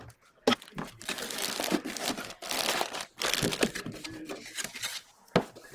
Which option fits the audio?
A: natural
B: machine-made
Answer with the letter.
A